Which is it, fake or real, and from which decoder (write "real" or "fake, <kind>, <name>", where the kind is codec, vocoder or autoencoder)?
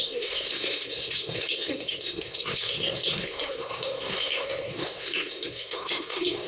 fake, codec, SNAC